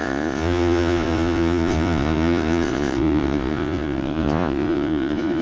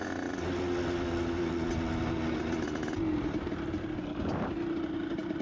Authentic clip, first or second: second